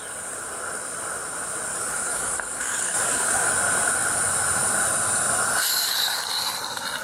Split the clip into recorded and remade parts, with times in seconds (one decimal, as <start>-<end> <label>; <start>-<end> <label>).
0.0-1.7 recorded; 1.7-3.5 remade; 3.5-5.6 recorded; 5.6-6.2 remade; 6.2-7.0 recorded